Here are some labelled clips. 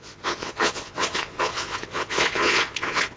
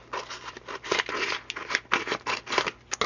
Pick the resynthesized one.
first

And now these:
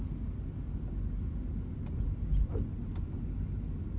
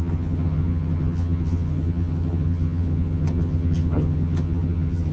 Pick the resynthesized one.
second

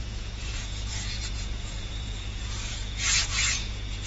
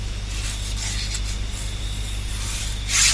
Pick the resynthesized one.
first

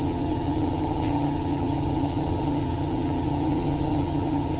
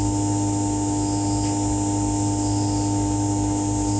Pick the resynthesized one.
first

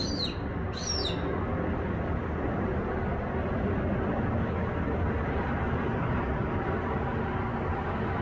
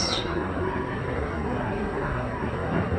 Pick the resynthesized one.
second